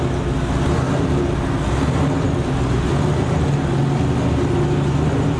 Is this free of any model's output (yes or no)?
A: yes